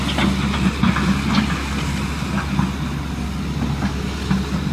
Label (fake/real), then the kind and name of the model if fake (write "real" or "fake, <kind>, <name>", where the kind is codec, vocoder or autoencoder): real